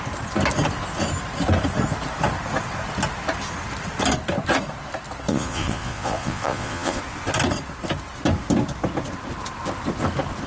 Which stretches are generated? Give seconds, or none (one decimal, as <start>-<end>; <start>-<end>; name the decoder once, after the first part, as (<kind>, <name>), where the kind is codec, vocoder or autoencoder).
5.3-7.0 (vocoder, Vocos)